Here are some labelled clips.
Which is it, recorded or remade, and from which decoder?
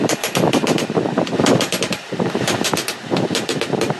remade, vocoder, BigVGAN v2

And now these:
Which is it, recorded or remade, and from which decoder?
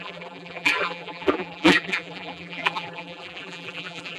remade, vocoder, BigVGAN v2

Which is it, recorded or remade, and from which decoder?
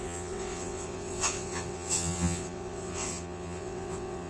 remade, vocoder, WaveNeXt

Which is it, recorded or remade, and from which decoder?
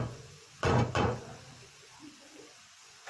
remade, vocoder, Vocos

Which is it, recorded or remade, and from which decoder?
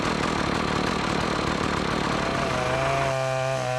recorded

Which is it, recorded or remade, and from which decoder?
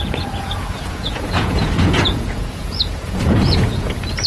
remade, vocoder, Vocos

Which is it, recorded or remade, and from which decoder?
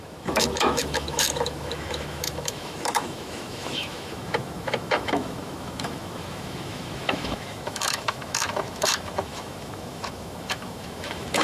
remade, autoencoder, DAC-VAE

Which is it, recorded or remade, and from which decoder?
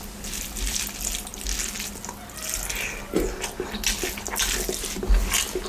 recorded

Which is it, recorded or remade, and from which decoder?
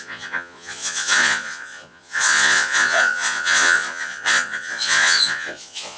remade, vocoder, Vocos